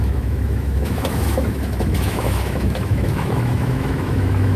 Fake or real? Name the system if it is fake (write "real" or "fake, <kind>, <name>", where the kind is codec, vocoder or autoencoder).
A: fake, autoencoder, DAC-VAE